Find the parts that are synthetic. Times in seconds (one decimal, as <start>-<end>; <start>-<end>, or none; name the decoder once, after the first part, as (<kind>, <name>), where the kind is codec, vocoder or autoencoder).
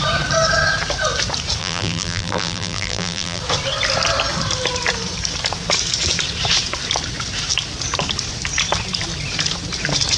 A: 1.6-3.4 (vocoder, BigVGAN v2)